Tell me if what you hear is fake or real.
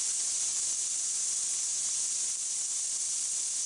real